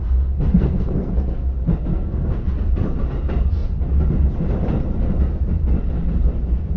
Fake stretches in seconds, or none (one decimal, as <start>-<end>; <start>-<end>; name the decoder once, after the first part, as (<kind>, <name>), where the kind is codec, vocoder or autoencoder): 0.5-1.1 (codec, SNAC); 1.9-2.5